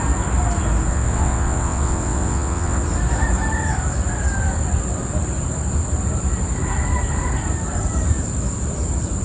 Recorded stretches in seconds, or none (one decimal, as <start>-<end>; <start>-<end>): 0.0-0.9; 2.8-9.2